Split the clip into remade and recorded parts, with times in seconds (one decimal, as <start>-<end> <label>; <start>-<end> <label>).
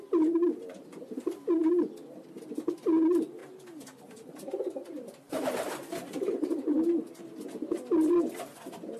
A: 0.0-3.4 recorded; 3.4-7.2 remade; 7.2-9.0 recorded